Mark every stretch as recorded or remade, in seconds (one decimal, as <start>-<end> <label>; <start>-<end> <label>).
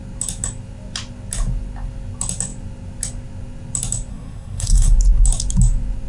0.0-4.1 recorded; 4.1-4.9 remade; 4.9-6.1 recorded